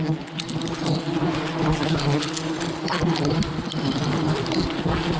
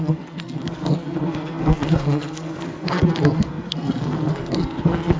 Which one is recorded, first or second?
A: first